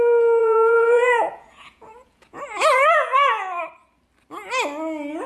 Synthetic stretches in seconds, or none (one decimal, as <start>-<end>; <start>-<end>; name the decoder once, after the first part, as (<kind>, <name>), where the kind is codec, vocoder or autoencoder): 0.4-3.6 (vocoder, Vocos)